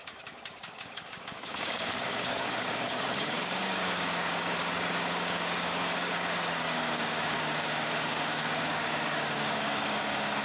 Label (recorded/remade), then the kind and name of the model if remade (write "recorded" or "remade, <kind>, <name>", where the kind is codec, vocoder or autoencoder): remade, codec, DAC